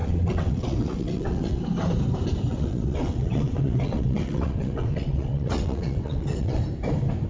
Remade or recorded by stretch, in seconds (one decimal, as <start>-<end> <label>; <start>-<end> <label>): 0.0-1.6 remade; 1.6-2.5 recorded; 2.5-6.6 remade; 6.6-7.3 recorded